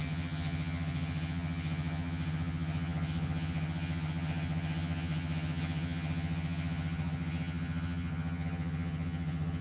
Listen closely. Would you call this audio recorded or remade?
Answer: remade